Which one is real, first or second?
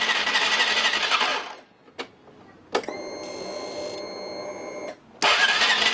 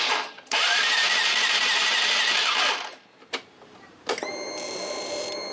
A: first